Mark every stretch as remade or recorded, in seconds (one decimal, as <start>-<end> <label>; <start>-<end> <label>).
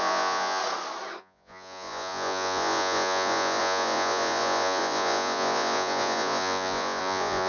0.0-0.6 remade; 0.6-1.2 recorded; 1.2-7.5 remade